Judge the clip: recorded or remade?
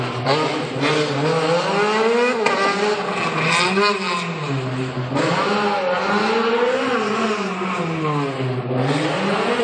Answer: recorded